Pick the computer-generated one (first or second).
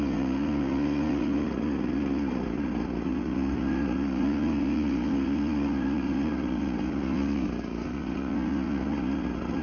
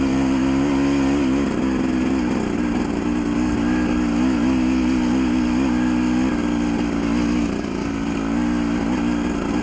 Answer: first